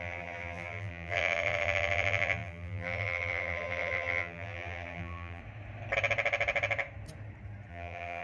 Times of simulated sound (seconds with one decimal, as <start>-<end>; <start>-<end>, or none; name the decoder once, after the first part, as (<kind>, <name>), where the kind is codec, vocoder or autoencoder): 0.0-5.4 (vocoder, BigVGAN v2); 7.7-8.2